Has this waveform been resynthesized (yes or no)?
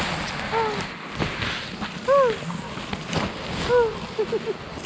no